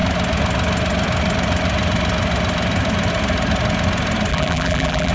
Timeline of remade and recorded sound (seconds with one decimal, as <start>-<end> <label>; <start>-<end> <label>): 0.0-4.3 recorded; 4.3-5.1 remade